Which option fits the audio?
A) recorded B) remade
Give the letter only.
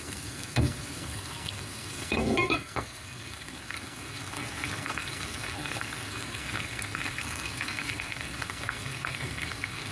B